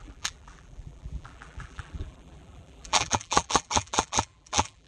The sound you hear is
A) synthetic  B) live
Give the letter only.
A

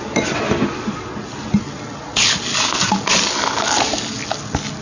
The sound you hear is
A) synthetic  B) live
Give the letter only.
B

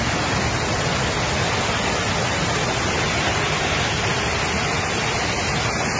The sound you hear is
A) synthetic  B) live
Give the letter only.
B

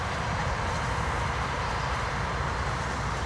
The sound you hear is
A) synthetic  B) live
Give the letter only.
A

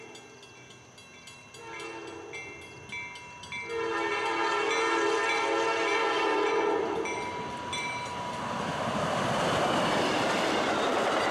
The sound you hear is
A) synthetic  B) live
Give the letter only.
B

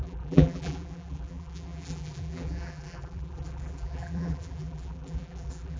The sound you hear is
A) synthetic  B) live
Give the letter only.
A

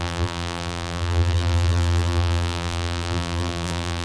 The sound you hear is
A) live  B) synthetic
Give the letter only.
B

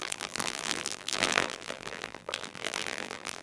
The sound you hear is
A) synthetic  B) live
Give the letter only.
A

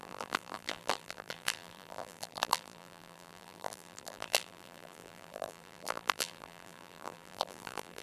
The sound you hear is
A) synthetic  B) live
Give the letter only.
A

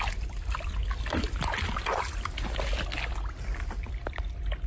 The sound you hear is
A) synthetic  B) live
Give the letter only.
B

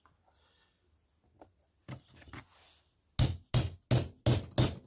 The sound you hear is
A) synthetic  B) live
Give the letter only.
B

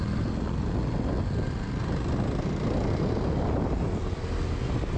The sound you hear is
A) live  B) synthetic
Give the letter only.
A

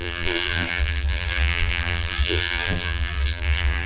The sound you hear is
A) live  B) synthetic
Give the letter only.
B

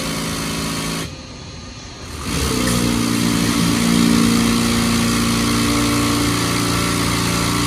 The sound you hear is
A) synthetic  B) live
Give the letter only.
B